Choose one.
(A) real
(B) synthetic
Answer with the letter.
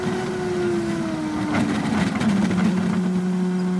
A